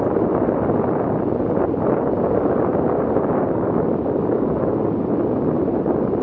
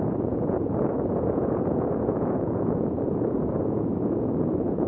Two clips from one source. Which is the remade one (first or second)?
second